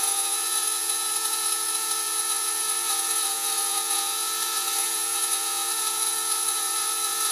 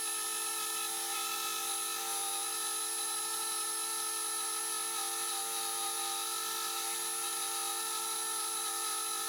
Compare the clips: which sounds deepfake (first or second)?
first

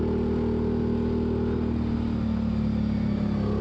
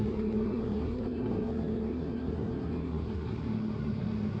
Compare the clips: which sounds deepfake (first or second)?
second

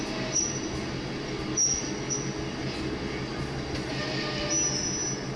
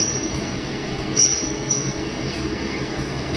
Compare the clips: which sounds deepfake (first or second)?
second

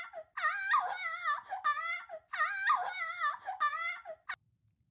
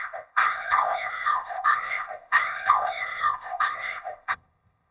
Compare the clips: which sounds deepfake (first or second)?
second